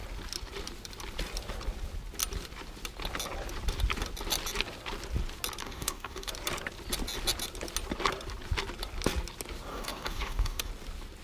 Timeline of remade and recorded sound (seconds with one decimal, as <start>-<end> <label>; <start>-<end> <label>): 0.0-5.6 recorded; 5.6-6.3 remade; 6.3-9.7 recorded; 9.7-10.7 remade; 10.7-11.2 recorded